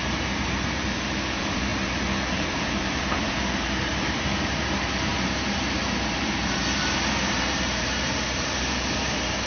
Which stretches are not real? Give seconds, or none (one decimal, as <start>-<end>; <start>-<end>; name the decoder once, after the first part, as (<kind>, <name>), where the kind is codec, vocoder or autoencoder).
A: 0.0-9.5 (vocoder, BigVGAN v2)